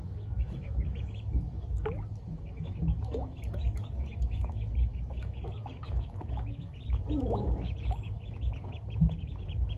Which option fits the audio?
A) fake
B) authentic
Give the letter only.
A